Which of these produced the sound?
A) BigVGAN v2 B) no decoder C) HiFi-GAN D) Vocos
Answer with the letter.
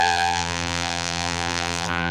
A